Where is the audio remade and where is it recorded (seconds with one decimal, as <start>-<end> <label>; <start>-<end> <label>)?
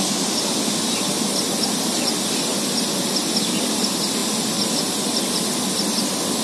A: 0.0-6.4 recorded